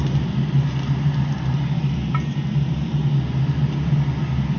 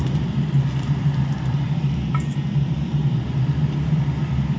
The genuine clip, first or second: first